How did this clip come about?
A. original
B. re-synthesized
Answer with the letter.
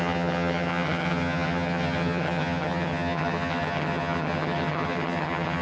B